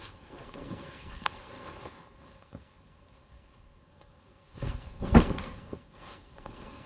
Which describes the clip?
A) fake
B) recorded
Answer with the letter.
A